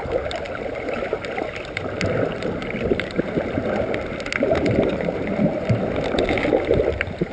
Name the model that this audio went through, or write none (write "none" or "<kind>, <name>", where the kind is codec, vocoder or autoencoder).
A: none